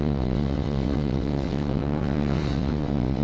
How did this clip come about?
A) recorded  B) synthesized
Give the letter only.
B